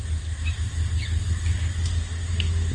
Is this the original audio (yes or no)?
yes